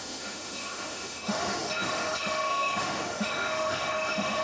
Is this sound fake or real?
fake